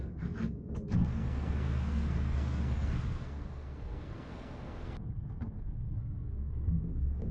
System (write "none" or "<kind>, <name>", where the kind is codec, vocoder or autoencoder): codec, SNAC